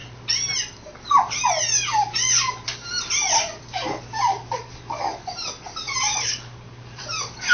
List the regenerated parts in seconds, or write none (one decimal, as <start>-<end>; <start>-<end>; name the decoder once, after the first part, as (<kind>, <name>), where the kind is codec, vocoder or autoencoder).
4.3-5.2 (codec, DAC); 6.1-7.0